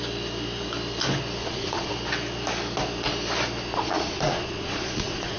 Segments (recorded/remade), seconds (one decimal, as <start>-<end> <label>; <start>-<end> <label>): 0.0-1.4 recorded; 1.4-1.9 remade; 1.9-3.7 recorded; 3.7-5.4 remade